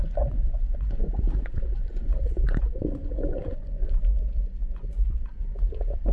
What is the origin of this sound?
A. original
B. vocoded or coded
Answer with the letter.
B